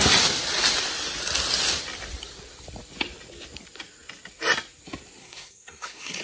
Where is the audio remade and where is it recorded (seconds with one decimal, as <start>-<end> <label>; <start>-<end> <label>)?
0.0-5.2 recorded; 5.2-6.2 remade